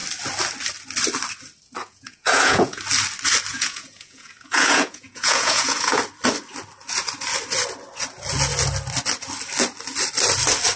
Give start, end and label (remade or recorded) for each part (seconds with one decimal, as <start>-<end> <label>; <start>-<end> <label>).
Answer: 0.0-1.8 recorded; 1.8-2.8 remade; 2.8-3.5 recorded; 3.5-6.0 remade; 6.0-10.8 recorded